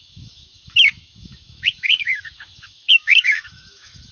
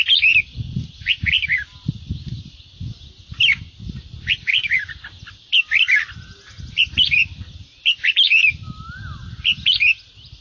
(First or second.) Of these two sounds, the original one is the second